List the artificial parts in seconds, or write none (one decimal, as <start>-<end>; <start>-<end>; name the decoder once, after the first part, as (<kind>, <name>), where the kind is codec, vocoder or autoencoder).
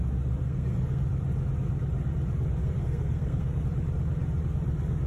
0.4-1.0 (codec, SNAC); 2.6-3.6